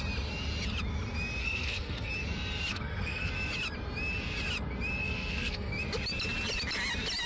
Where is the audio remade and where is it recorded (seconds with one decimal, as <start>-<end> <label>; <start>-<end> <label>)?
0.0-1.4 recorded; 1.4-2.1 remade; 2.1-2.7 recorded; 2.7-3.3 remade; 3.3-5.0 recorded; 5.0-5.7 remade; 5.7-7.3 recorded